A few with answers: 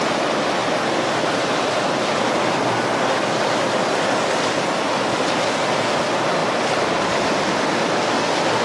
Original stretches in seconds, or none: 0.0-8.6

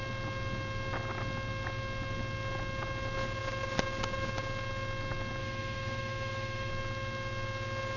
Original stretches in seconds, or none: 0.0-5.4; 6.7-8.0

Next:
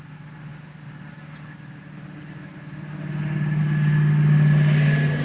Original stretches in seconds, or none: 0.0-5.2